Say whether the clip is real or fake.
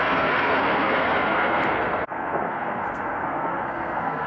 fake